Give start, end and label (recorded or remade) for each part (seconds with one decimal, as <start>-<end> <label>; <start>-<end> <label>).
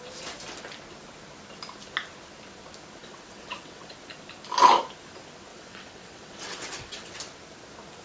0.0-3.0 recorded; 3.0-3.9 remade; 3.9-5.5 recorded; 5.5-7.2 remade; 7.2-8.0 recorded